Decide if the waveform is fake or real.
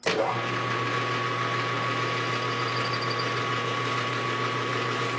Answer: real